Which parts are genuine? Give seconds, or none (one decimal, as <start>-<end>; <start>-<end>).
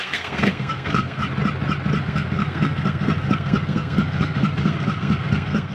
1.2-2.0